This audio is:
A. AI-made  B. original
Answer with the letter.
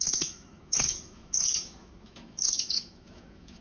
A